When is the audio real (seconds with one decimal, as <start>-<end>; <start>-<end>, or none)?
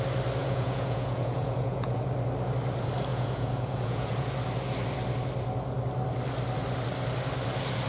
0.0-0.4; 2.0-3.1; 4.3-7.9